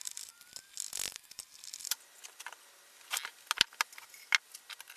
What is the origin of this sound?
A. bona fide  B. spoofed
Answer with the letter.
A